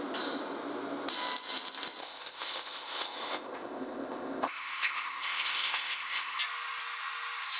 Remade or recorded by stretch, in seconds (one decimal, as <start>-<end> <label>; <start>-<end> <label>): 0.0-2.0 recorded; 2.0-6.4 remade; 6.4-7.6 recorded